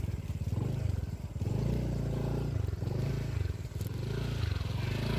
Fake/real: real